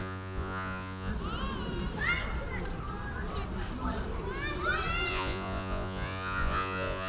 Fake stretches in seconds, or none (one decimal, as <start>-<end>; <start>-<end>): 0.0-1.1; 5.1-7.1